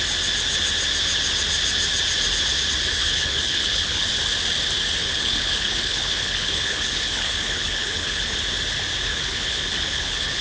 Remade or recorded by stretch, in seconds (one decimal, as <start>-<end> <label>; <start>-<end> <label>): 0.0-3.0 recorded; 3.0-4.1 remade; 4.1-5.0 recorded; 5.0-8.4 remade; 8.4-9.1 recorded; 9.1-10.4 remade